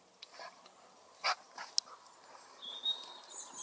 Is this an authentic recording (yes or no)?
yes